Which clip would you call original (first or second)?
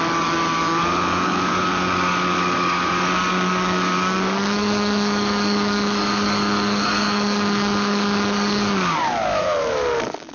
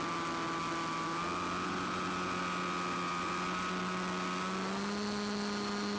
second